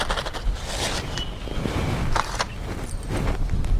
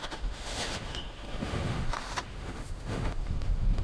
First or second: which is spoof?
second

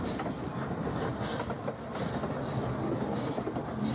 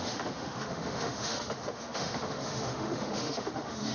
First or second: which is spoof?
second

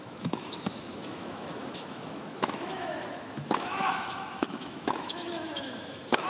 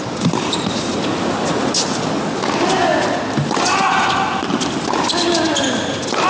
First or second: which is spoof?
first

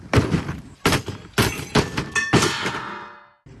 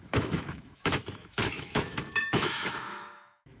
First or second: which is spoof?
second